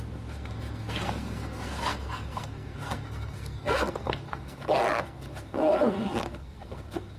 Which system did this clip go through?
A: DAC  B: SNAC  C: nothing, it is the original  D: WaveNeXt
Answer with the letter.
B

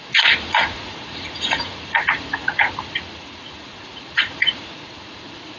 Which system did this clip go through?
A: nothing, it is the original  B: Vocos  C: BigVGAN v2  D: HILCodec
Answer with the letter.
B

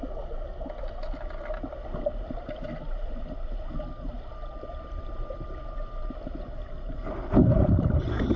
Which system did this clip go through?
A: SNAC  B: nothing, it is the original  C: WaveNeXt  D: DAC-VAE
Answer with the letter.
B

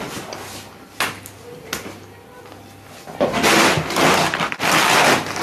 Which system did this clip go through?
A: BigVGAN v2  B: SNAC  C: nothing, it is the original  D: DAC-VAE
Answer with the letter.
C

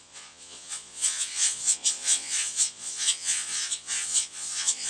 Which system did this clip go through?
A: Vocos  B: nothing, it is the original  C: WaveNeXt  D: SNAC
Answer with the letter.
A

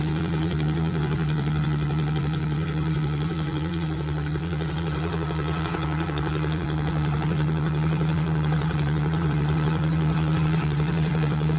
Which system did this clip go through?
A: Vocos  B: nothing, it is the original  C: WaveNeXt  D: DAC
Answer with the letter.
C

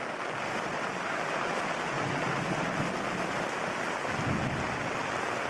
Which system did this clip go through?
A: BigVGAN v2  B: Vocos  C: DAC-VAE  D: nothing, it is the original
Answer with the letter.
D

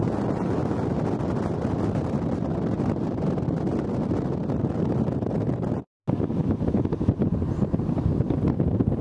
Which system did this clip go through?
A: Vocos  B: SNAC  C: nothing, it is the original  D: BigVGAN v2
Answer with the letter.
C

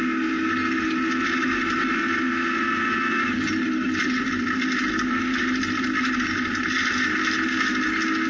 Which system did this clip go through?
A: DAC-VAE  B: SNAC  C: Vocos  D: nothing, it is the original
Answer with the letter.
D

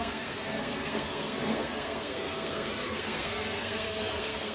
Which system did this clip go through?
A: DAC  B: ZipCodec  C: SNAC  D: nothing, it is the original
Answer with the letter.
C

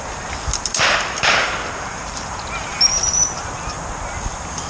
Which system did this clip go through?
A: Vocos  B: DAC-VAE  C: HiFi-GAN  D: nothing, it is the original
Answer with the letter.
D